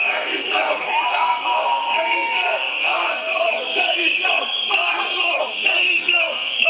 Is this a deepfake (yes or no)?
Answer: yes